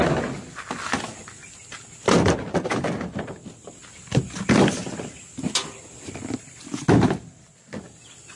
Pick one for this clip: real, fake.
real